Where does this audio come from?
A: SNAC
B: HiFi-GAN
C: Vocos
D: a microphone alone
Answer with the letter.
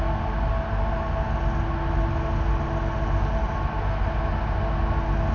D